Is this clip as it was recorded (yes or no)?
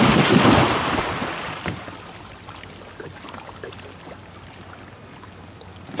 yes